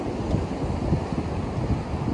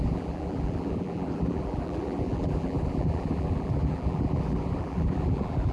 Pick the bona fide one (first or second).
first